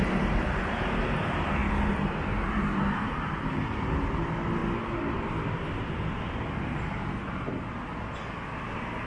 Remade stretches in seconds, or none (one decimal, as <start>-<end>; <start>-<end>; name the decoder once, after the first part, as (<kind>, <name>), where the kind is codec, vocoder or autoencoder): none